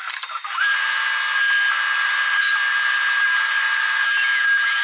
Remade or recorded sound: recorded